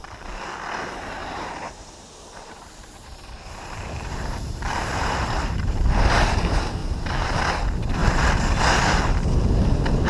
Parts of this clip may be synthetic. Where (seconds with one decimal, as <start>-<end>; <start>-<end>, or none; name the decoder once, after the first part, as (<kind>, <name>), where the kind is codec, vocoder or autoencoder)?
1.2-5.9 (vocoder, BigVGAN v2); 6.8-7.3; 8.0-8.6